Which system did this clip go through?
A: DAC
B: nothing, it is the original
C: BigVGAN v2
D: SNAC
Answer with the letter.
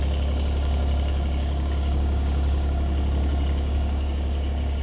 A